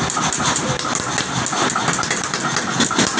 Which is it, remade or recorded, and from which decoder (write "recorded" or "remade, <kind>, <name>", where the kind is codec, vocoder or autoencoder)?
recorded